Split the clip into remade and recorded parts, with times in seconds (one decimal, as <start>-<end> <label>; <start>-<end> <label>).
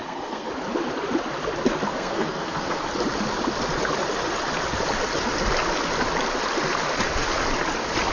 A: 0.0-0.5 remade; 0.5-1.9 recorded; 1.9-2.8 remade; 2.8-8.1 recorded